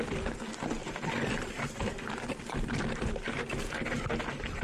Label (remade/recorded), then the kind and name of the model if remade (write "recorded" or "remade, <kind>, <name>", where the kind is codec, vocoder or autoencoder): recorded